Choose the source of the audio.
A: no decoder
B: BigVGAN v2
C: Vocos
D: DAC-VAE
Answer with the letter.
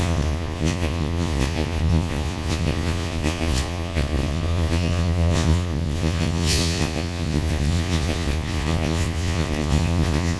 C